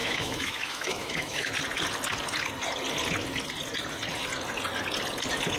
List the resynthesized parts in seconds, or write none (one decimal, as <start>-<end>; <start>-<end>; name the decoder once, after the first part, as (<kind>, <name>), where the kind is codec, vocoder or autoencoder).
0.0-1.5 (autoencoder, DAC-VAE)